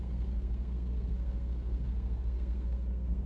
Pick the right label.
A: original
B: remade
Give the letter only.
B